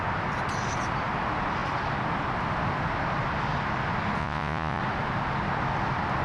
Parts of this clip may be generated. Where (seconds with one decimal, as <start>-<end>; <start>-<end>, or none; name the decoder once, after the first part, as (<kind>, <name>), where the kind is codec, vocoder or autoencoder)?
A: 4.2-4.8 (vocoder, Vocos)